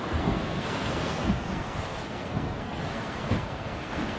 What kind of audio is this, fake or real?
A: fake